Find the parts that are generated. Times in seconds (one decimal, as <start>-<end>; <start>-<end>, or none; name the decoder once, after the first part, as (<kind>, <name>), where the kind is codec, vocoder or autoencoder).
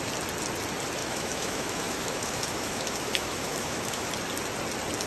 1.0-4.1 (autoencoder, DAC-VAE)